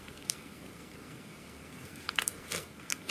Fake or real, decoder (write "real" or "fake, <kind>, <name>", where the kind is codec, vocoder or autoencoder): fake, codec, SNAC